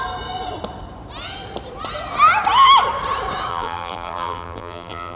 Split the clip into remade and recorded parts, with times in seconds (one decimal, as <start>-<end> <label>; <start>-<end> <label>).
0.0-3.5 recorded; 3.5-5.2 remade